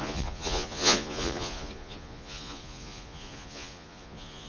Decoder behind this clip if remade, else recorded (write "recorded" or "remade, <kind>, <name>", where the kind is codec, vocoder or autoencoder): remade, vocoder, Vocos